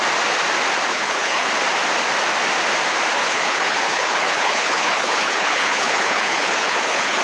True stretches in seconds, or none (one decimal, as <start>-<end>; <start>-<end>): 0.0-0.9; 1.5-3.2

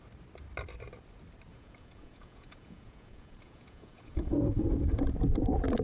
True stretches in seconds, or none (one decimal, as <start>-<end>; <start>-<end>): 0.0-1.5; 5.0-5.8

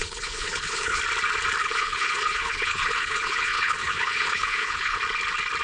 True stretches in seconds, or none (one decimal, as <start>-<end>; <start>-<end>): 1.0-1.6; 5.0-5.6

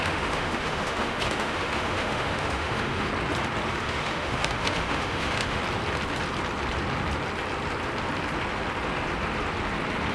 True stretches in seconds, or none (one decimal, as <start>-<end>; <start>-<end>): 3.1-3.8; 5.6-10.1

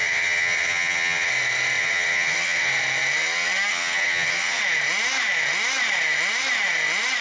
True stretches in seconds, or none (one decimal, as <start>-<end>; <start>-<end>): 1.3-1.8; 2.7-3.7; 4.6-7.2

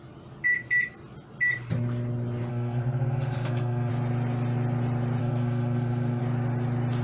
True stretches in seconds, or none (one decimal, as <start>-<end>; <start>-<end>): 0.0-2.5; 3.9-5.2; 6.2-7.0

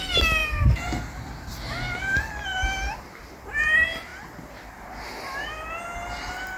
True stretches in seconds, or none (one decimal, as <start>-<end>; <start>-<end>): 0.0-0.4; 1.0-6.6